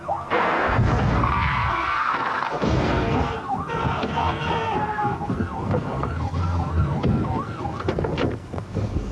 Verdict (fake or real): fake